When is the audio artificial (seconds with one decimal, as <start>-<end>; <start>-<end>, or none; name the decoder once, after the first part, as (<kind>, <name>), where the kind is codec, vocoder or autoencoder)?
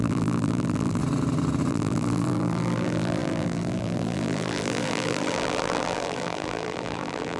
0.0-1.0 (vocoder, BigVGAN v2); 1.7-7.4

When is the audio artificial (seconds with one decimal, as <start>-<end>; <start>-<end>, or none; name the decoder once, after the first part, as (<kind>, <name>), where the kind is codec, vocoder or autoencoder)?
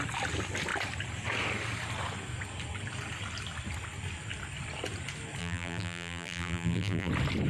5.4-7.1 (vocoder, BigVGAN v2)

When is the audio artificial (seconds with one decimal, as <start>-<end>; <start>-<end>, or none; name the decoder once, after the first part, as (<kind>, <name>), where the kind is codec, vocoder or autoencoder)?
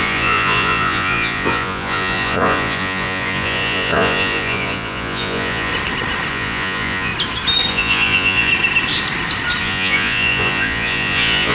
0.0-5.7 (vocoder, Vocos); 6.3-7.1; 7.7-8.5; 9.6-11.5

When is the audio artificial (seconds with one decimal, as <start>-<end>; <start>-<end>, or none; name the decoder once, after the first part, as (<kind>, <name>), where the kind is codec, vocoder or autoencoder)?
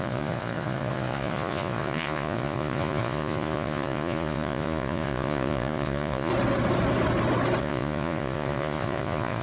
0.0-6.3 (vocoder, Vocos); 7.6-9.4